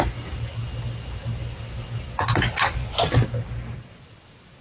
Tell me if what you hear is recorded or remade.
recorded